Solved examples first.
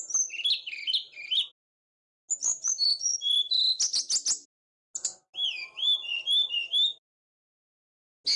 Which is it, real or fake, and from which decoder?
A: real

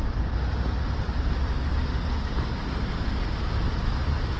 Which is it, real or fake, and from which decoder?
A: real